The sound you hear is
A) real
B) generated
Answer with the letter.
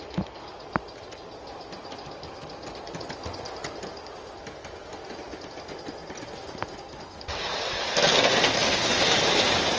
A